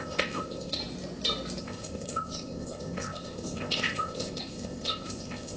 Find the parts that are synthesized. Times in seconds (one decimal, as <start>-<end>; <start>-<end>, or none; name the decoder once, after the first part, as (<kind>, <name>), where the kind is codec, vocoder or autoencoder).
0.0-0.8 (codec, ZipCodec); 1.6-5.6